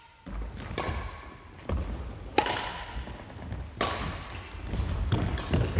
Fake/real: real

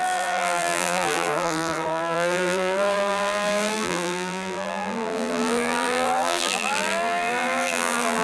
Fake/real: fake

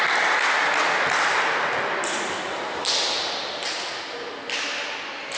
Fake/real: real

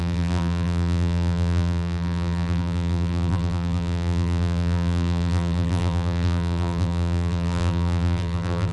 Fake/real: fake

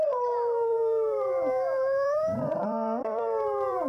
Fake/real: fake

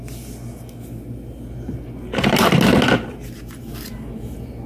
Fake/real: real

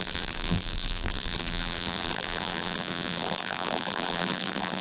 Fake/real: fake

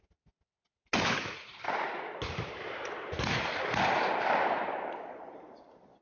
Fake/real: real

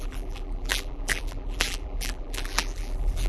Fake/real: fake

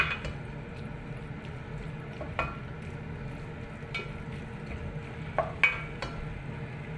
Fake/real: real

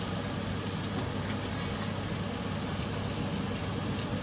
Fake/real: real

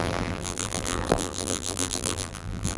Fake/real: fake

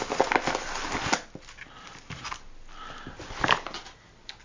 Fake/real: real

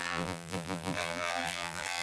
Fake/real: fake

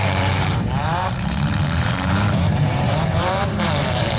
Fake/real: fake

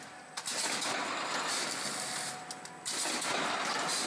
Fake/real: real